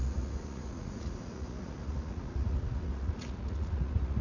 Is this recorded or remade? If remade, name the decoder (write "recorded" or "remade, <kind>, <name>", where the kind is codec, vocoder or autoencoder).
remade, vocoder, Vocos